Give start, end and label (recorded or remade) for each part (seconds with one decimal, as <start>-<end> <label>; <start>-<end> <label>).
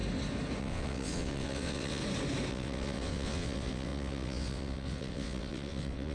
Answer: 0.0-0.6 recorded; 0.6-2.0 remade; 2.0-2.5 recorded; 2.5-6.1 remade